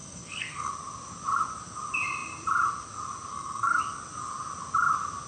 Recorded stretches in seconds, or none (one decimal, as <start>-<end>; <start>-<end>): 0.7-3.3; 3.8-5.3